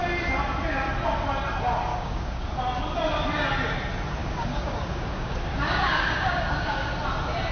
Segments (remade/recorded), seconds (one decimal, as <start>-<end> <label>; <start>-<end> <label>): 0.0-1.9 recorded; 1.9-2.5 remade; 2.5-4.2 recorded; 4.2-6.9 remade; 6.9-7.5 recorded